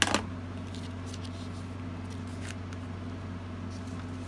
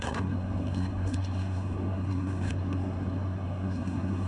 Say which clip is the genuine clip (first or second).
first